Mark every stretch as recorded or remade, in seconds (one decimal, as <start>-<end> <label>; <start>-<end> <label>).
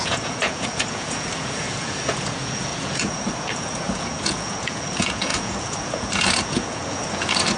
0.0-7.6 remade